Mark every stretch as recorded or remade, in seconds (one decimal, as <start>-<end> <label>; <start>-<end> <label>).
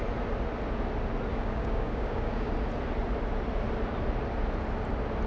0.0-1.3 recorded; 1.3-2.5 remade; 2.5-5.3 recorded